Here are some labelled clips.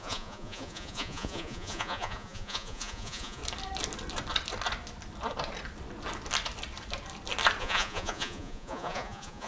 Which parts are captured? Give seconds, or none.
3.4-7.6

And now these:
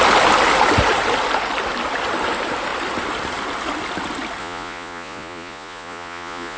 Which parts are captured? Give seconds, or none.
0.0-4.4